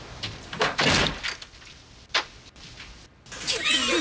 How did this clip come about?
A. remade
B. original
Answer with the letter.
B